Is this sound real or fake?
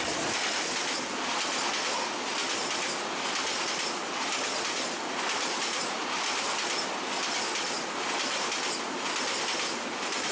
real